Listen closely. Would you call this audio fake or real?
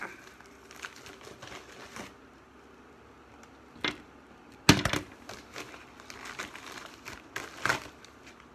real